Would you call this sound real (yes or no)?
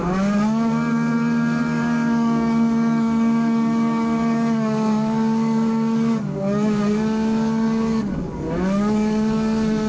no